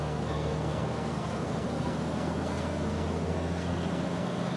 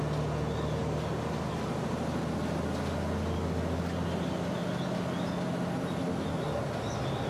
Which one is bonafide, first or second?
second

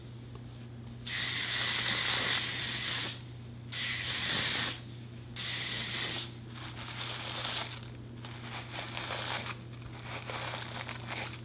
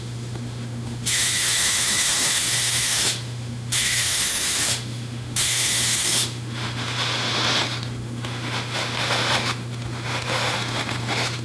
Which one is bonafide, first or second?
first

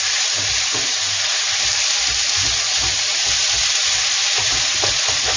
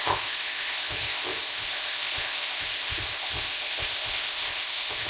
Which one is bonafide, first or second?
first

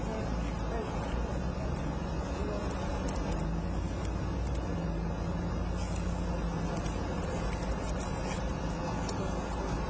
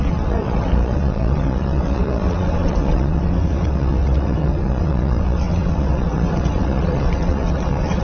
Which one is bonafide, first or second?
first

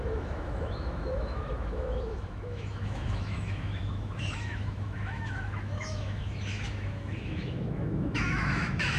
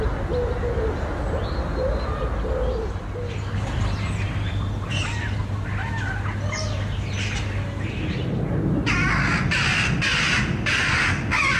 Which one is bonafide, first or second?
second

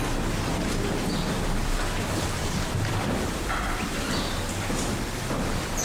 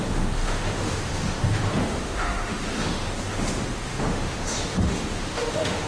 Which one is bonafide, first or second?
first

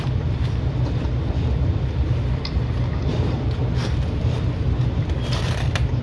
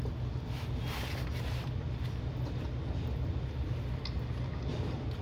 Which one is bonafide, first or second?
second